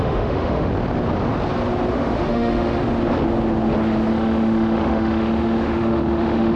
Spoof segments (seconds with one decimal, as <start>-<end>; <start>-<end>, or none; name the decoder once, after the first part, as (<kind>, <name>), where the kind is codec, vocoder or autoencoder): 0.0-0.7 (autoencoder, DAC-VAE); 1.9-2.8; 4.1-6.6